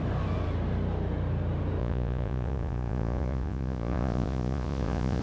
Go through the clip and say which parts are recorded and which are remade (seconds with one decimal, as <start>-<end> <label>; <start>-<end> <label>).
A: 0.0-1.8 recorded; 1.8-5.2 remade

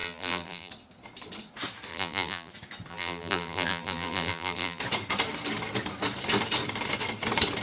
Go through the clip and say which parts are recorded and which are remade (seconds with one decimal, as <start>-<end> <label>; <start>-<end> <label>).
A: 0.0-0.7 remade; 0.7-1.9 recorded; 1.9-2.5 remade; 2.5-2.9 recorded; 2.9-4.8 remade; 4.8-7.6 recorded

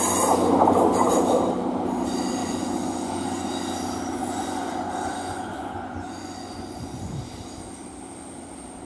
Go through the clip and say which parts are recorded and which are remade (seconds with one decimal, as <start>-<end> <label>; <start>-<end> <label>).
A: 0.0-2.4 recorded; 2.4-3.5 remade; 3.5-4.2 recorded; 4.2-7.1 remade; 7.1-8.9 recorded

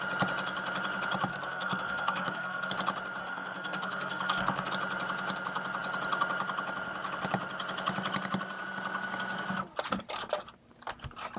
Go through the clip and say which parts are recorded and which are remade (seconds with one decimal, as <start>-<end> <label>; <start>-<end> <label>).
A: 0.0-1.3 recorded; 1.3-2.7 remade; 2.7-3.2 recorded; 3.2-4.7 remade; 4.7-11.4 recorded

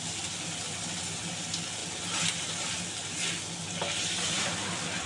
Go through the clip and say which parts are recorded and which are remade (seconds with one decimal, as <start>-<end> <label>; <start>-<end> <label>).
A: 0.0-5.1 recorded

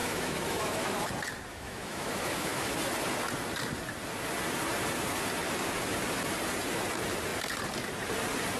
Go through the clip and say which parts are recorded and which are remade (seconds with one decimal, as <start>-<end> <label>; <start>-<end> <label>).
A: 0.0-1.1 remade; 1.1-1.5 recorded; 1.5-2.7 remade; 2.7-8.6 recorded